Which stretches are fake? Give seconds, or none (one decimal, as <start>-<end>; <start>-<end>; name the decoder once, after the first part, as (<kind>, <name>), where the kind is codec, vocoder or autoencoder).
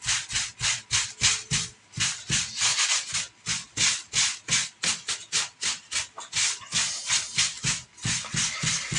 none